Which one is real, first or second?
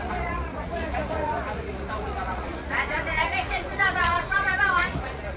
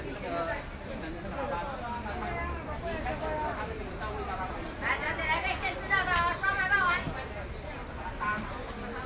second